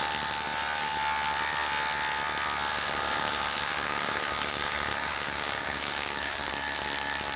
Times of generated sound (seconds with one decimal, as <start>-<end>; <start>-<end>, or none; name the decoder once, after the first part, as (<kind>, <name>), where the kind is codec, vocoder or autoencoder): 2.7-6.5 (codec, DAC)